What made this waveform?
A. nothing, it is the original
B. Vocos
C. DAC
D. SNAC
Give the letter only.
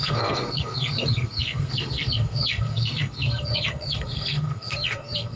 D